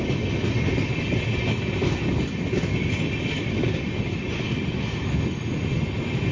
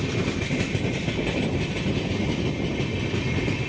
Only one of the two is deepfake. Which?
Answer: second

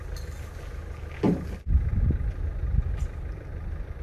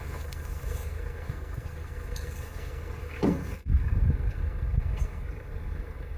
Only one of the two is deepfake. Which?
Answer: second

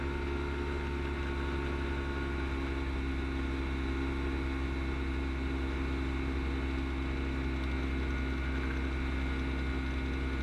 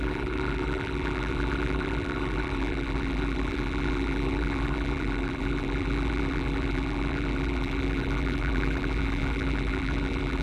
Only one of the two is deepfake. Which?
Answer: second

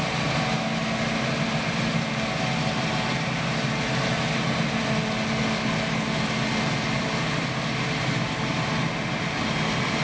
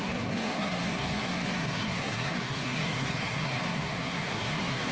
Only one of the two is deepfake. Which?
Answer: second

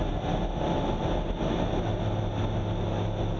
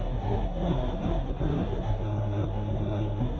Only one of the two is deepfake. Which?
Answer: second